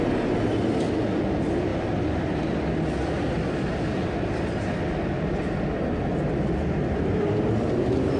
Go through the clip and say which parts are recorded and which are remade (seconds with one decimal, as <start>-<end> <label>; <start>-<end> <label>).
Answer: 0.0-8.2 recorded

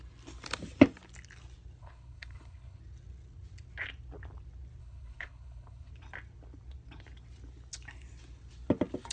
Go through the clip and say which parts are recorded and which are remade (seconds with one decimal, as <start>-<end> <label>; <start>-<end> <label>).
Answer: 0.0-1.8 recorded; 1.8-2.8 remade; 2.8-4.8 recorded; 4.8-5.9 remade; 5.9-9.1 recorded